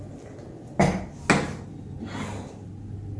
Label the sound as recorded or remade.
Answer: recorded